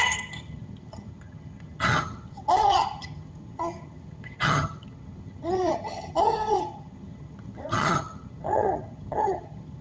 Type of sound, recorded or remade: remade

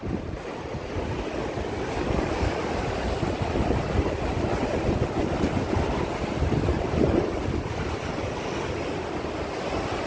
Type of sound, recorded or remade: recorded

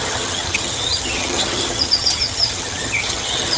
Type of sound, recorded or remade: remade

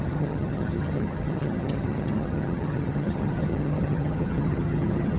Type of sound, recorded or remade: remade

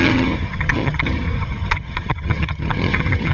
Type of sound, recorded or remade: remade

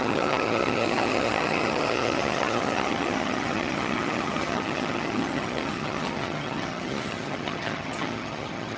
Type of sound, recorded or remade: remade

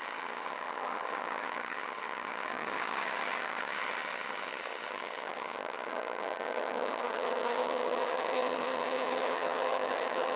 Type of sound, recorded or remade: remade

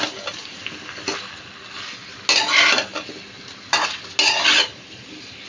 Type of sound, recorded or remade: recorded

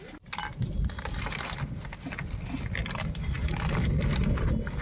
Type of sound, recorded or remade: recorded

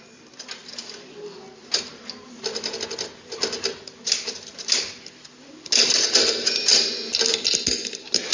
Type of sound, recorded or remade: recorded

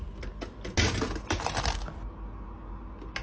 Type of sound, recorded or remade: recorded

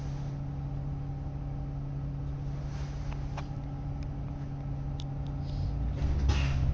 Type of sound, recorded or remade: recorded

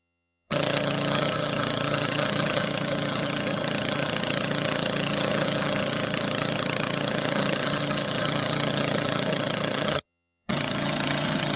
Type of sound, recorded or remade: remade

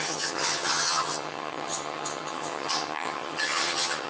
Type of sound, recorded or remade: remade